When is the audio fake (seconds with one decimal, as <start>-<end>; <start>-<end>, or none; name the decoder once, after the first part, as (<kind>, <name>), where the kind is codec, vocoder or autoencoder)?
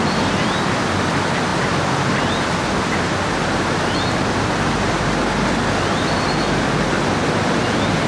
none